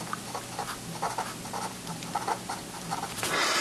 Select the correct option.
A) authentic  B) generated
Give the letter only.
A